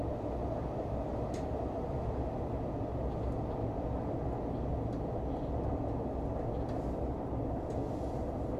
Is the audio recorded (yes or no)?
yes